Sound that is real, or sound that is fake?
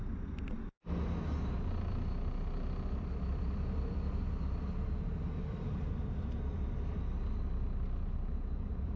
real